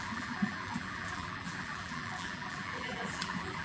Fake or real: fake